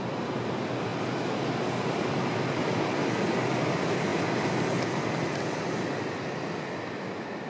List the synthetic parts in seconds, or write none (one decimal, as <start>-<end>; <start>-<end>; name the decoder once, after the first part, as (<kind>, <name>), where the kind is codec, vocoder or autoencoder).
none